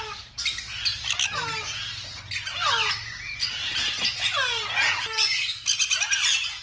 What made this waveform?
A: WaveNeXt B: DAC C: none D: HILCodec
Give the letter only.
C